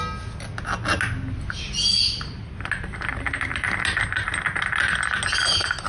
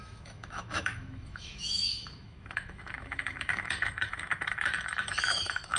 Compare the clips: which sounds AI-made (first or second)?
second